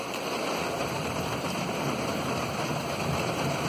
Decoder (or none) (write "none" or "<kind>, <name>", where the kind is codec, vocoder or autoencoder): vocoder, BigVGAN v2